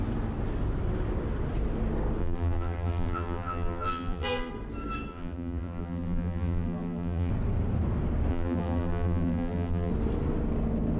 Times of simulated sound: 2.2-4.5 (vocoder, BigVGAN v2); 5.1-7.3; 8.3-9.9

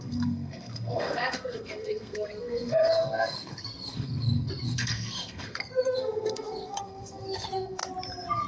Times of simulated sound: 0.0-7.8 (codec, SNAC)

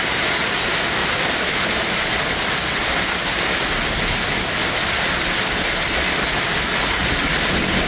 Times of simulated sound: 1.0-3.0 (vocoder, BigVGAN v2)

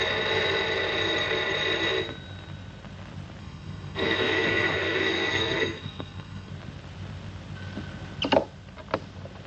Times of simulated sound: 3.4-6.5 (codec, SNAC)